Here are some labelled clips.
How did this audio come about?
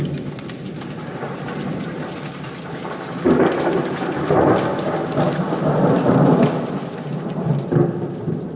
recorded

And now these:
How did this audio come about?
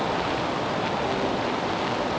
recorded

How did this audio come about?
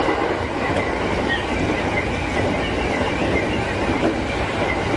recorded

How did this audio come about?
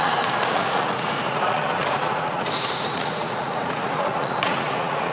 remade